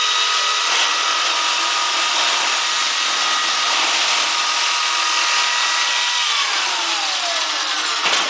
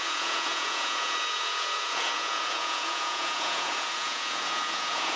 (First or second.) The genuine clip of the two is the first